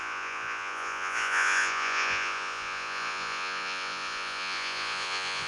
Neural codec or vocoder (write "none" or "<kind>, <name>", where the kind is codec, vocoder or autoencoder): vocoder, Vocos